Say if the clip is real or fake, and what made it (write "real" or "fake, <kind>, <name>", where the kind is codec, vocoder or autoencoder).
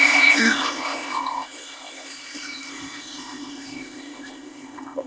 fake, codec, ZipCodec